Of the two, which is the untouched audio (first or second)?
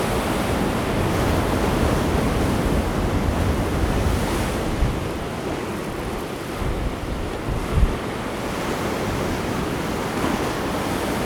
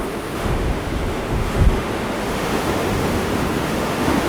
first